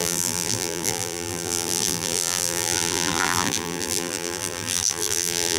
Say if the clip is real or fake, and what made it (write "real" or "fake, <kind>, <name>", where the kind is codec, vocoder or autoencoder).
fake, vocoder, BigVGAN v2